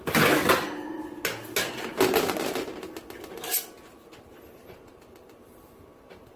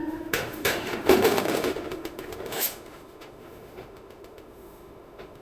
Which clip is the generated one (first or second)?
second